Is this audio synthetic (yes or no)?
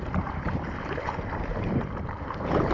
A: yes